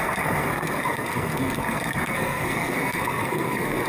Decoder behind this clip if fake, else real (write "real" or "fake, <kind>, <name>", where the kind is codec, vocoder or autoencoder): fake, codec, SNAC